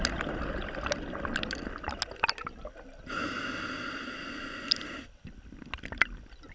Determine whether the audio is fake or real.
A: real